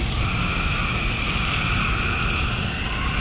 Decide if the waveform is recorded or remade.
recorded